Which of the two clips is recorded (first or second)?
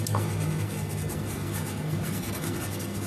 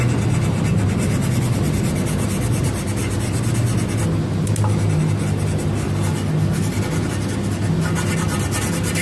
second